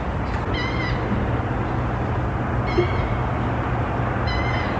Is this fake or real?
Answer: real